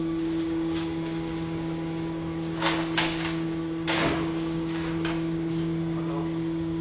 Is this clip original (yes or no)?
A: no